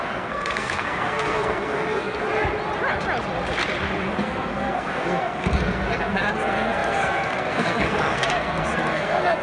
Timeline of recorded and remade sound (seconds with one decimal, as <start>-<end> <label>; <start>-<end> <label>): 0.0-2.2 remade; 2.2-4.2 recorded; 4.2-9.4 remade